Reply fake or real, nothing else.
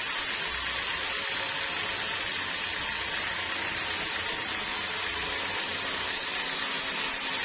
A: real